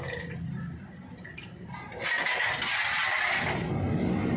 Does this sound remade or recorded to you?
recorded